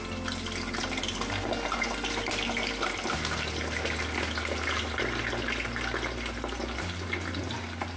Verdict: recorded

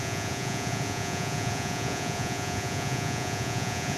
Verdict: remade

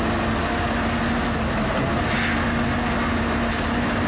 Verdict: recorded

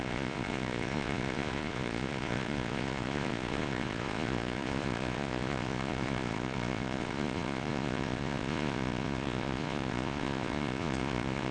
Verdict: remade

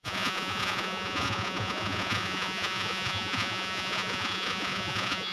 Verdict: remade